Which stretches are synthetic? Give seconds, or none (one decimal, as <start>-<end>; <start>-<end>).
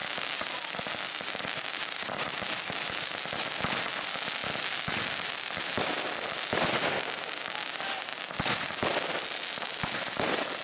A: none